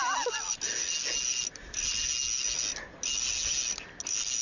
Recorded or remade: recorded